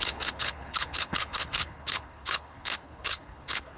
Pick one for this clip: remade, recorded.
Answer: remade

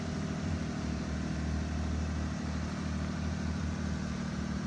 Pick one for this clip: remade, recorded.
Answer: recorded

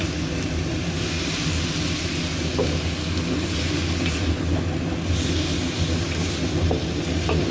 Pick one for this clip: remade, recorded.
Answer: recorded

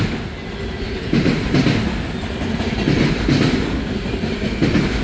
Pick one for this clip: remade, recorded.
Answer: recorded